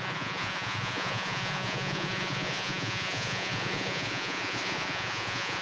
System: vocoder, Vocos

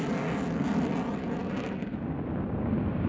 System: none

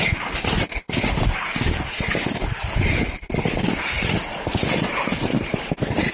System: none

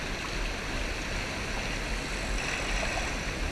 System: none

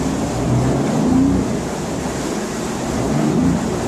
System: none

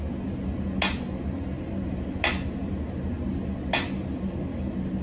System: none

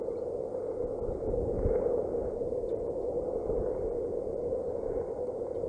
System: none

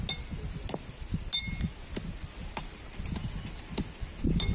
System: none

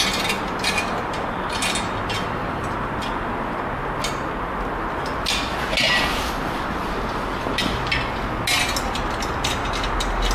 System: none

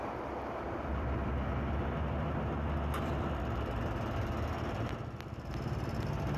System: none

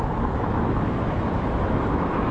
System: autoencoder, DAC-VAE